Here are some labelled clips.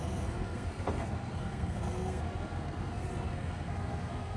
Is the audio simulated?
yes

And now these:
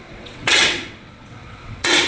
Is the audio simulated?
yes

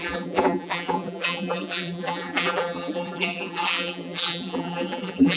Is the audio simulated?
yes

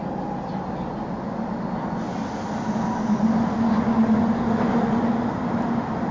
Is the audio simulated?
no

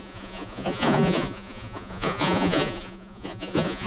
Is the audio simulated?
yes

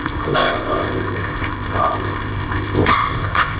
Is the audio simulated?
yes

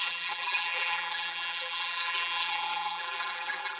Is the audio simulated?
yes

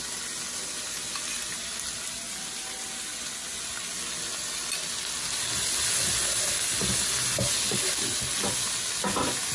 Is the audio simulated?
no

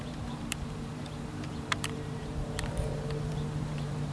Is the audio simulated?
yes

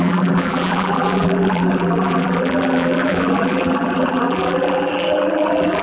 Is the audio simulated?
yes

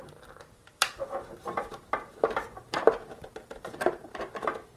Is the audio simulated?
yes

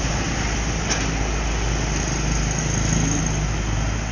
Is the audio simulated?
no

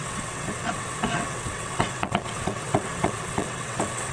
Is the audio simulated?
yes